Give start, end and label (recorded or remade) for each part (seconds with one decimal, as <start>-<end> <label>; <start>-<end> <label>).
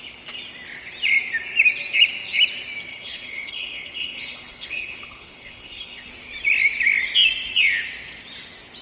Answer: 0.0-2.9 recorded; 2.9-6.1 remade; 6.1-8.8 recorded